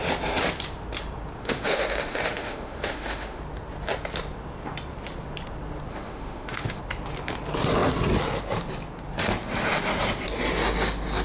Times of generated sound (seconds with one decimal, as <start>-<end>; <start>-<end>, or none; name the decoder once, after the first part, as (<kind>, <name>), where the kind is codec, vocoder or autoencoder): 1.4-3.4 (autoencoder, DAC-VAE); 5.9-6.8